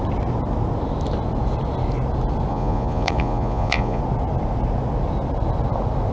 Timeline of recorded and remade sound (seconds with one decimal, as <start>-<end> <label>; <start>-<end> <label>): 0.0-2.5 recorded; 2.5-4.0 remade; 4.0-6.1 recorded